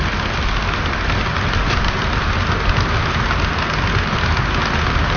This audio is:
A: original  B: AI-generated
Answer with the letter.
A